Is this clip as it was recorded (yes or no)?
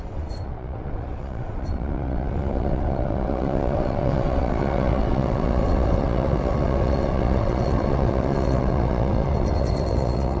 no